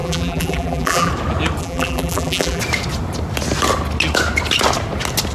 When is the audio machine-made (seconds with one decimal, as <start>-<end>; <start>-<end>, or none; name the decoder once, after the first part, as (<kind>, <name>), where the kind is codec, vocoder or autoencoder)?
0.0-1.1 (vocoder, BigVGAN v2); 1.6-2.6